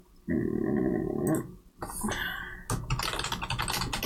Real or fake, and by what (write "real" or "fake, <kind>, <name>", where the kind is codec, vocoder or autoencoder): real